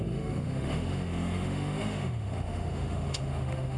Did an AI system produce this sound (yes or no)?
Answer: yes